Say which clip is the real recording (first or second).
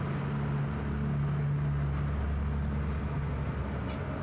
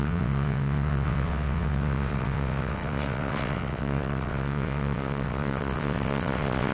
first